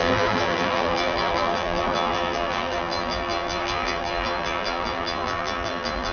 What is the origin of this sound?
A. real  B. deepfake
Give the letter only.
B